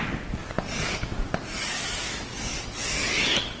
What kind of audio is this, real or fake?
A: real